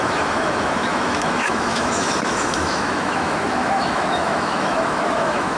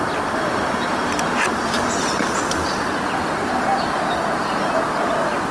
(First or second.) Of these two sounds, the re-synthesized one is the first